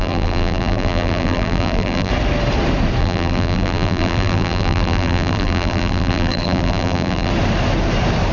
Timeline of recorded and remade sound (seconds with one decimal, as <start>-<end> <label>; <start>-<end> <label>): 0.0-2.1 remade; 2.1-3.0 recorded; 3.0-7.3 remade; 7.3-8.3 recorded

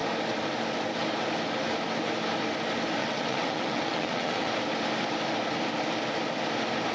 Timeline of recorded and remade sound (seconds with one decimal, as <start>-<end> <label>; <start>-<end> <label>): 0.0-3.0 recorded; 3.0-4.5 remade; 4.5-6.9 recorded

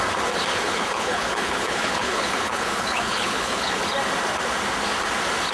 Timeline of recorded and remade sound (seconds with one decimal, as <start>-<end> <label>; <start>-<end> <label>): 0.0-0.5 recorded; 0.5-3.8 remade; 3.8-5.5 recorded

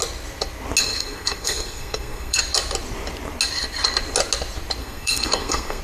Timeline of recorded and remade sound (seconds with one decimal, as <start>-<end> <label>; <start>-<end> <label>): 0.0-0.8 recorded; 0.8-2.4 remade; 2.4-4.8 recorded; 4.8-5.8 remade

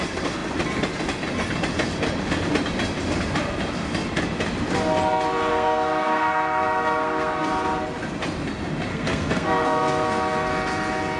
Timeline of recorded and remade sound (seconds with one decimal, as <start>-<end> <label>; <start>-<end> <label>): 0.0-5.5 recorded; 5.5-7.5 remade; 7.5-8.9 recorded; 8.9-10.5 remade; 10.5-11.2 recorded

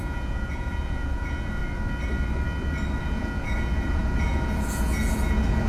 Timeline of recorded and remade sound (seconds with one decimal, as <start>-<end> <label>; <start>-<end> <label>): 0.0-1.6 remade; 1.6-3.0 recorded; 3.0-5.7 remade